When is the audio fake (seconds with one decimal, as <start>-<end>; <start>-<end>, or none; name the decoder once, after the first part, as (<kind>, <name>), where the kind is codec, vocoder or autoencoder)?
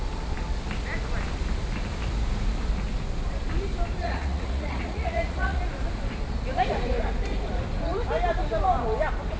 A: 4.0-5.6 (vocoder, Vocos)